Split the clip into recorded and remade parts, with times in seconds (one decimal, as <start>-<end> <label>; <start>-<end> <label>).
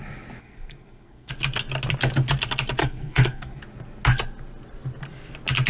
0.0-0.4 recorded; 0.4-1.3 remade; 1.3-2.8 recorded; 2.8-3.6 remade; 3.6-5.7 recorded